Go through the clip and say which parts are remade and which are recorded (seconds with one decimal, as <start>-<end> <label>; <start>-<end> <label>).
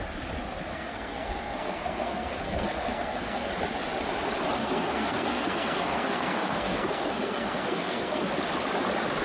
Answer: 0.0-0.7 recorded; 0.7-3.5 remade; 3.5-4.6 recorded; 4.6-8.3 remade; 8.3-9.2 recorded